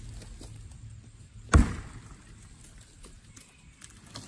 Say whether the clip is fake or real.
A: real